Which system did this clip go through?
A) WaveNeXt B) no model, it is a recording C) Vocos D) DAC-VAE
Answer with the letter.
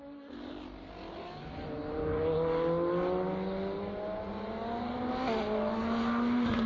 B